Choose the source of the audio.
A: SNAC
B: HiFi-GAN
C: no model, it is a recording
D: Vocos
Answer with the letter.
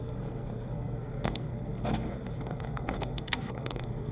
A